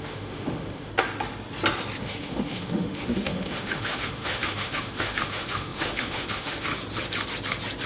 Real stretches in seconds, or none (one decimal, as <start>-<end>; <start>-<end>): 0.9-2.0; 6.7-7.9